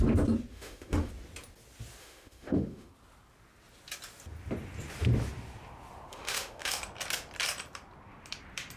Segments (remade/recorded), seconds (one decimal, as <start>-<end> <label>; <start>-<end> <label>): 0.0-0.5 recorded; 0.5-1.1 remade; 1.1-2.0 recorded; 2.0-2.9 remade; 2.9-6.1 recorded; 6.1-6.8 remade; 6.8-8.8 recorded